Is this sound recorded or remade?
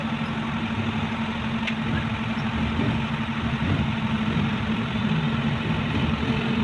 recorded